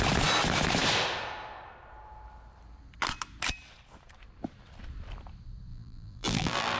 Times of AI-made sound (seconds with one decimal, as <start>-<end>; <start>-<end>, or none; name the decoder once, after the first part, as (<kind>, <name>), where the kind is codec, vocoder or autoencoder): 5.7-6.8 (vocoder, BigVGAN v2)